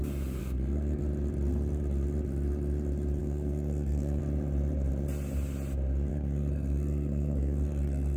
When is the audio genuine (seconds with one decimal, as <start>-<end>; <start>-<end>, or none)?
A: 0.0-0.4; 1.0-3.2; 4.2-6.1